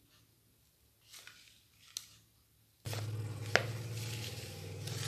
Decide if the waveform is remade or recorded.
recorded